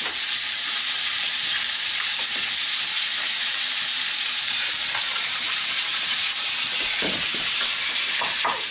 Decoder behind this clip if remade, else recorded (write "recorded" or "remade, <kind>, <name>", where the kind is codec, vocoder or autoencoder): remade, vocoder, BigVGAN v2